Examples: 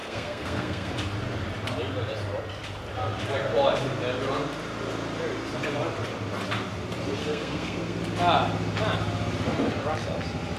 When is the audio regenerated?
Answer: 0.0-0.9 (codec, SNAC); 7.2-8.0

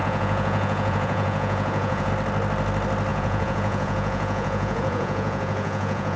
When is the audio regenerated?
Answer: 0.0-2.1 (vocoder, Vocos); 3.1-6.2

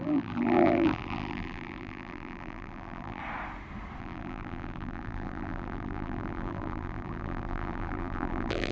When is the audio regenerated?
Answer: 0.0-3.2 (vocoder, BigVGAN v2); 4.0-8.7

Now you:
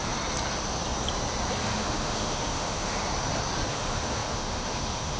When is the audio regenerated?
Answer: 1.6-3.0 (autoencoder, DAC-VAE); 3.7-5.2

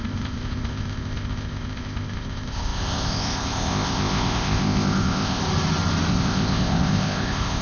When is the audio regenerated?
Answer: 0.0-5.4 (codec, ZipCodec); 6.1-7.6

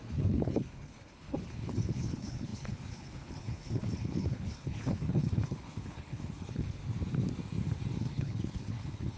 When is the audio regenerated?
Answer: 0.0-6.8 (codec, HILCodec); 8.0-9.2